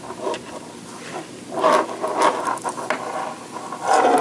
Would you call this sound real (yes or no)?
yes